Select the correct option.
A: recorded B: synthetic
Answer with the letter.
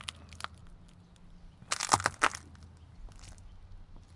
A